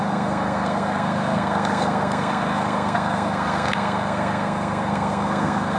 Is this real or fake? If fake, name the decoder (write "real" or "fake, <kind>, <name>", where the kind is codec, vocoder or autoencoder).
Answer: fake, codec, SNAC